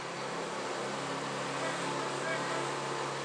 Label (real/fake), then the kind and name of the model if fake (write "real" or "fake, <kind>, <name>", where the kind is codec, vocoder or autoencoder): real